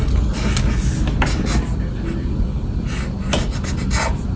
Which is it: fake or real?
real